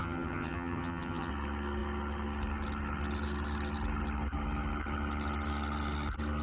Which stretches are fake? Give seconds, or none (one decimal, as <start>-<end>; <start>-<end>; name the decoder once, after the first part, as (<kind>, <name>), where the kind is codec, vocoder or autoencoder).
0.0-1.3 (vocoder, HiFi-GAN)